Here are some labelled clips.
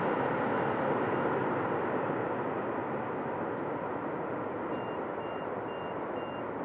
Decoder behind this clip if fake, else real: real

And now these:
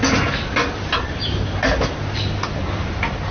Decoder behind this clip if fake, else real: real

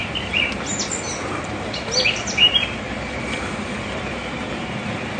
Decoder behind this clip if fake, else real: real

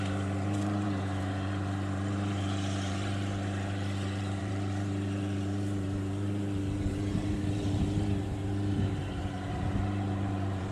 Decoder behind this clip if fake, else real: fake, vocoder, BigVGAN v2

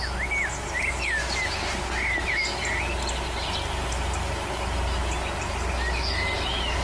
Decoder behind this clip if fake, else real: real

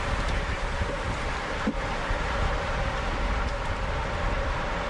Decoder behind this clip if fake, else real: fake, vocoder, BigVGAN v2